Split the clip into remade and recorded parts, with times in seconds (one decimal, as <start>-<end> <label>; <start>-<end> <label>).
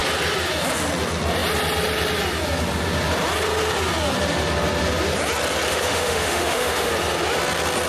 0.0-5.7 recorded; 5.7-6.9 remade; 6.9-7.9 recorded